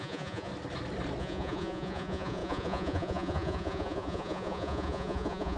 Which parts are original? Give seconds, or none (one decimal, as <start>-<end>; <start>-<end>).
0.5-1.2